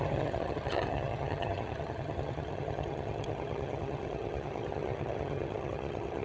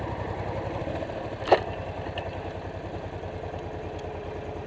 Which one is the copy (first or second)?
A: first